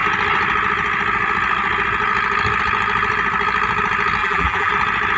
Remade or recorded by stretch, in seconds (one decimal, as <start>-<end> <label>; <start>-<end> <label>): 0.0-4.2 recorded; 4.2-4.7 remade; 4.7-5.2 recorded